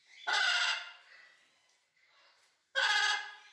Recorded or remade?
recorded